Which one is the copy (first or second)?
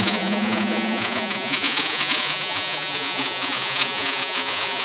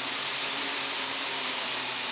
first